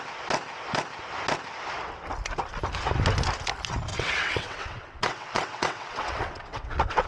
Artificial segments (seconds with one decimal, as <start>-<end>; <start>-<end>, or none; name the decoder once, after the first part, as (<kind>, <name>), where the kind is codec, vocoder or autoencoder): 3.9-7.1 (vocoder, WaveNeXt)